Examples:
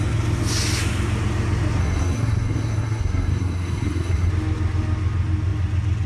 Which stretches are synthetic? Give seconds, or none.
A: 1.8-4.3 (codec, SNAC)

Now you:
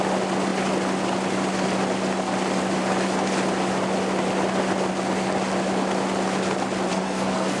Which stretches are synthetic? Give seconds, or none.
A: 6.9-7.6 (codec, SNAC)

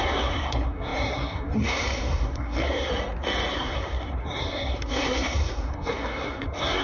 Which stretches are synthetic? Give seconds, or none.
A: 0.0-2.9 (codec, SNAC); 3.5-6.8

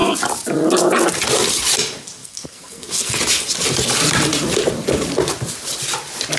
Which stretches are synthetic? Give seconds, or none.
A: 2.2-3.2 (codec, SNAC)